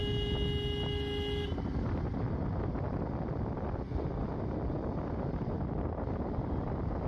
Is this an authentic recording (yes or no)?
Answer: yes